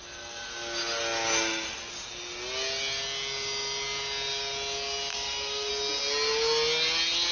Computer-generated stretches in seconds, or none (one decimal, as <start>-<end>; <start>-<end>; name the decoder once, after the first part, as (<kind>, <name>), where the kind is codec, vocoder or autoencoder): 5.1-5.7 (autoencoder, DAC-VAE)